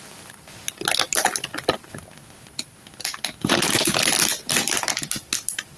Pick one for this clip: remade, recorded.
recorded